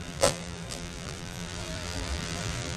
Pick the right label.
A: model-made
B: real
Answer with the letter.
A